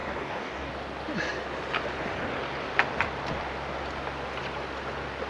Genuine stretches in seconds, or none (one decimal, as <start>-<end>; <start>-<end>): 0.7-5.3